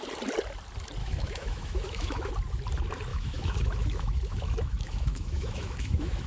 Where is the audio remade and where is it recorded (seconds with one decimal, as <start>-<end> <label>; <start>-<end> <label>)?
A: 0.0-1.0 recorded; 1.0-2.3 remade; 2.3-3.1 recorded; 3.1-6.3 remade